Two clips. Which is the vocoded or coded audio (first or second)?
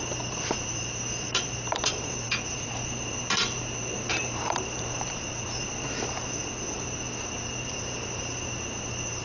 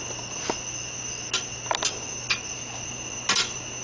first